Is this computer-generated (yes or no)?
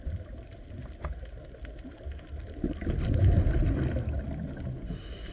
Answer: no